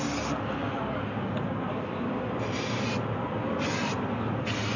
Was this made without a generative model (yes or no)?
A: yes